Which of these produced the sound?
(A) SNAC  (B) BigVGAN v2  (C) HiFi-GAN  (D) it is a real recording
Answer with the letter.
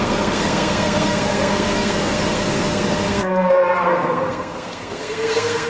A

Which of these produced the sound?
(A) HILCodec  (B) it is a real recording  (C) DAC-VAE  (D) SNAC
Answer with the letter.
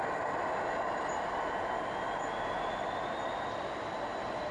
B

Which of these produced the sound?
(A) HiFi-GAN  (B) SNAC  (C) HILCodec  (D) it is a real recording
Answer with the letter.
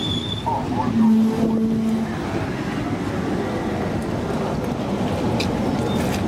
D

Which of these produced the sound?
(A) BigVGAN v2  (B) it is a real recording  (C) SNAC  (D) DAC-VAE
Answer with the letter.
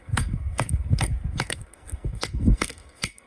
C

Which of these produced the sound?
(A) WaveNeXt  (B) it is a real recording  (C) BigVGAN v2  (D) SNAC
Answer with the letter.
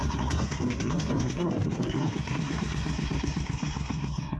D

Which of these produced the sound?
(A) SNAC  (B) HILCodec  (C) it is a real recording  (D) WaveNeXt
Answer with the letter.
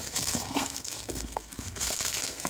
A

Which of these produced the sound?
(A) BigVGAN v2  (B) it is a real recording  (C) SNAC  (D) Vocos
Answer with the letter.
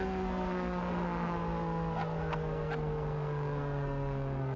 C